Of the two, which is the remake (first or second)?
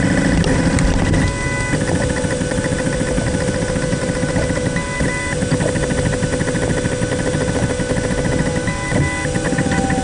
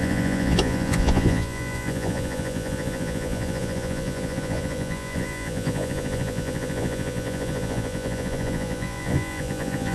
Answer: second